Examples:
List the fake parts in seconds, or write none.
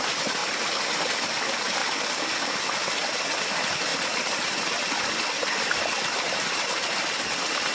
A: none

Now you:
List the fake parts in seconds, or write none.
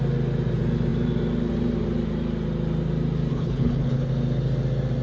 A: 3.3-4.1 (codec, HILCodec)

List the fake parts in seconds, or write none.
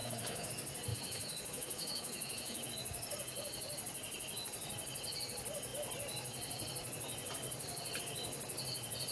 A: 0.0-0.5 (autoencoder, DAC-VAE); 0.9-2.7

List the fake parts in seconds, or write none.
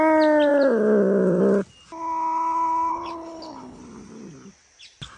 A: 2.9-3.8 (codec, HILCodec)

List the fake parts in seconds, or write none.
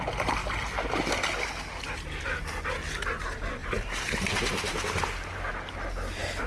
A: 3.6-5.5 (vocoder, BigVGAN v2)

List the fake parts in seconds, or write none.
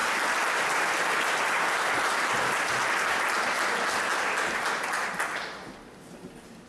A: none